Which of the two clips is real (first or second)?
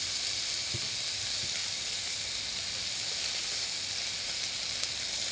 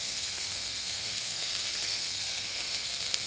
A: first